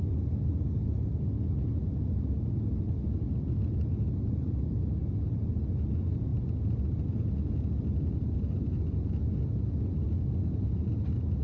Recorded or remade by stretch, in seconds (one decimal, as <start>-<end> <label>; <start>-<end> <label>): 0.0-11.4 recorded